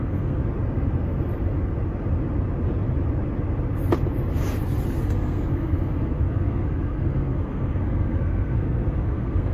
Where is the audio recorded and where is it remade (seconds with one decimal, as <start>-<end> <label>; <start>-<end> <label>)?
0.0-0.4 remade; 0.4-5.0 recorded; 5.0-9.5 remade

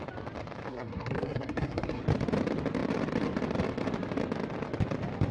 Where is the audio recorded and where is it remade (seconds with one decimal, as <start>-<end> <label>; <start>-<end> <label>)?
0.0-0.7 recorded; 0.7-2.0 remade; 2.0-5.3 recorded

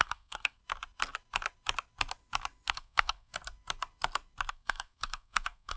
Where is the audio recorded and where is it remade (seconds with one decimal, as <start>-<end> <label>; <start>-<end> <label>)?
0.0-0.6 remade; 0.6-2.7 recorded; 2.7-3.3 remade; 3.3-4.5 recorded; 4.5-5.8 remade